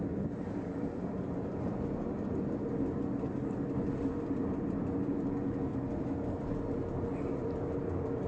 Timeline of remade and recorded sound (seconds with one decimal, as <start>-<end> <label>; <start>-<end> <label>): 0.0-8.3 recorded